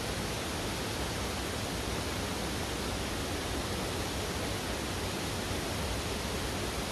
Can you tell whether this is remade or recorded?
recorded